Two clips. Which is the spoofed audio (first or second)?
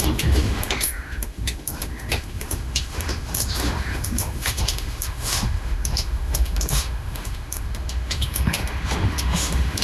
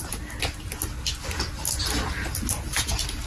first